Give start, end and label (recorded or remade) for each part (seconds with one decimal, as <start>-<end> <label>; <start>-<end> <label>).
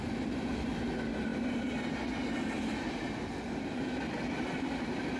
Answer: 0.0-5.2 recorded